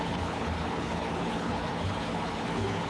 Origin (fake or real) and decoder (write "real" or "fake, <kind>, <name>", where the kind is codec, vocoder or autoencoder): fake, codec, HILCodec